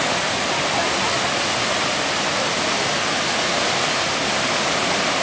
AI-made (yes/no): yes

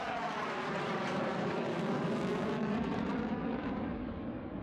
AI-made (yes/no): yes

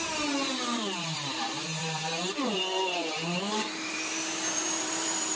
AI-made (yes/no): yes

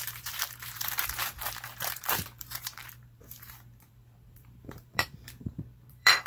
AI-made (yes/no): yes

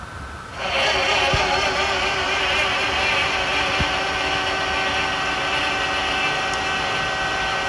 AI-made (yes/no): no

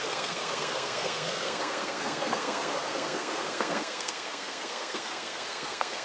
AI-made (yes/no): yes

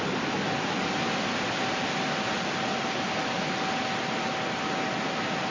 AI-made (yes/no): no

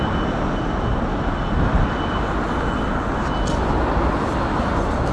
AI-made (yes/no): no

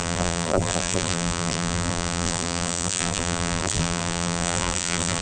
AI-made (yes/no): yes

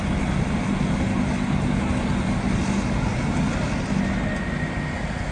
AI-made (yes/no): no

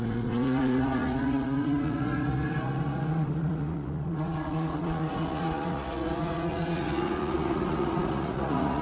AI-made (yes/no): yes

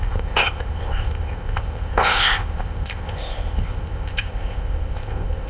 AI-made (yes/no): yes